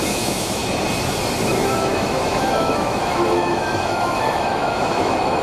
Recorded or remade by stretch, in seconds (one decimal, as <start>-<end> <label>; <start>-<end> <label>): 0.0-0.6 remade; 0.6-1.4 recorded; 1.4-5.4 remade